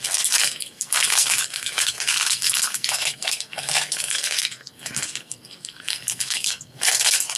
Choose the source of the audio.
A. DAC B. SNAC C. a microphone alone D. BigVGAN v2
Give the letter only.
B